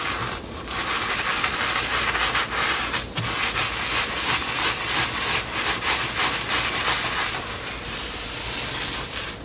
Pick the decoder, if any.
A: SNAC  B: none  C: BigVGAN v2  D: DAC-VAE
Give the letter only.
B